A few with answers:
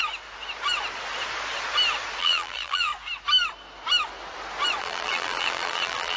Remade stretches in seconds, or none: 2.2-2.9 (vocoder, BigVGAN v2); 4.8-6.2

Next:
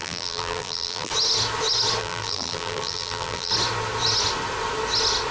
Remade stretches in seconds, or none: 0.0-1.1 (vocoder, BigVGAN v2); 2.0-3.5

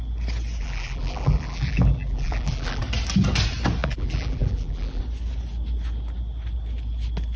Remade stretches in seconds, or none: 0.6-2.8 (vocoder, BigVGAN v2); 3.8-5.0

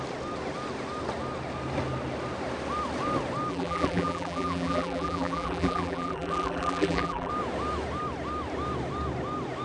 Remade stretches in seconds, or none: 3.5-7.3 (vocoder, BigVGAN v2)

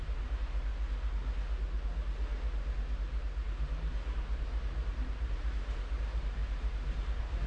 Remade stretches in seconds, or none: 0.0-0.7 (vocoder, BigVGAN v2); 4.9-7.5

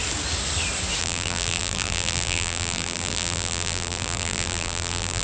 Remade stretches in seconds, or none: 1.0-5.2 (vocoder, BigVGAN v2)